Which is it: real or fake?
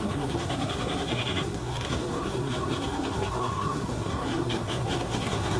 fake